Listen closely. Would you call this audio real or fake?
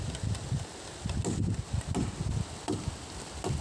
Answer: real